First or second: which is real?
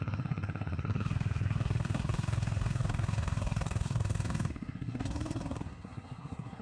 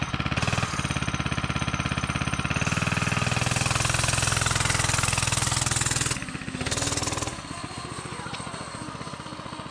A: second